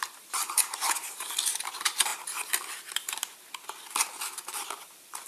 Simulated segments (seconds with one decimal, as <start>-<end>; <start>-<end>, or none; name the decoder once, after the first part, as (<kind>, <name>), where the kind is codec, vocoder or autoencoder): 0.0-2.1 (vocoder, BigVGAN v2)